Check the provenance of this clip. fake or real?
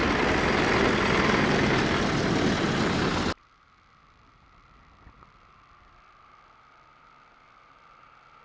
real